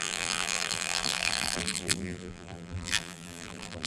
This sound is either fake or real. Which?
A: fake